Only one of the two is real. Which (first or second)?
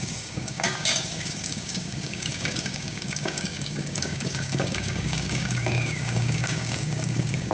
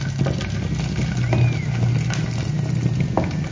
second